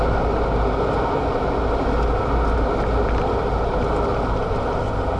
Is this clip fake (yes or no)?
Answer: no